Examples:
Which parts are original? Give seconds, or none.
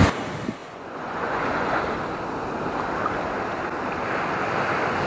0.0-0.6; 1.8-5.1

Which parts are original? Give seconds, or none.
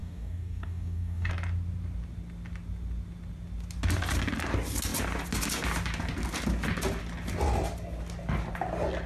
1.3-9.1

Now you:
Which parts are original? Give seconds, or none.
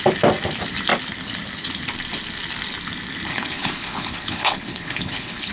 0.0-3.3